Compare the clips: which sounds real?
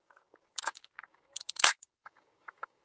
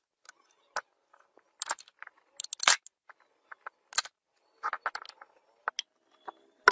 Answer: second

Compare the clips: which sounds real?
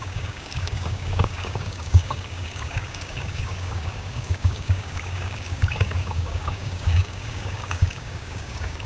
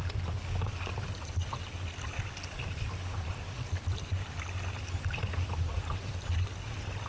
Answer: second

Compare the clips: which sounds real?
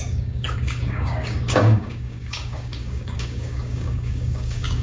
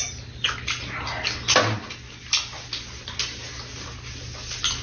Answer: second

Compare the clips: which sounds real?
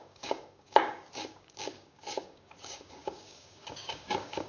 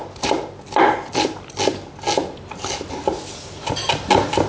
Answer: second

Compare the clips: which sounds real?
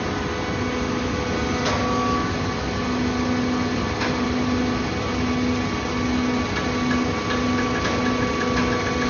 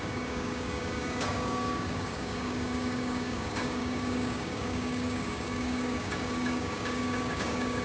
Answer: first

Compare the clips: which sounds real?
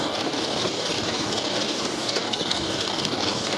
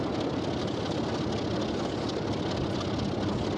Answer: second